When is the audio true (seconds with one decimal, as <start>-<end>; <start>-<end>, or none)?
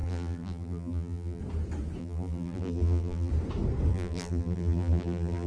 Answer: 1.4-2.0; 3.3-3.9